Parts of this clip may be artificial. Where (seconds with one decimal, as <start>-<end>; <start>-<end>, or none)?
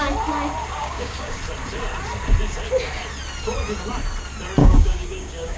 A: 0.8-1.4; 4.6-5.6